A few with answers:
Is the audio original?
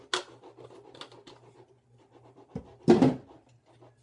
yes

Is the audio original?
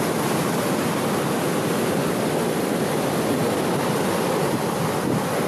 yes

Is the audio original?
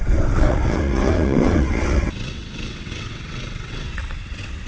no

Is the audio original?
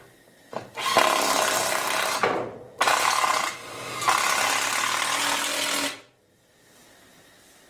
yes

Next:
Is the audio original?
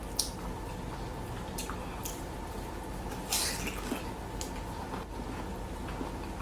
yes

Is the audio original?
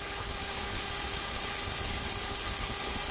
no